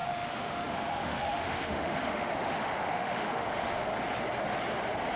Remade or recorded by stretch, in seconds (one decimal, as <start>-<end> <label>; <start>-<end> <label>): 0.0-3.8 remade; 3.8-5.2 recorded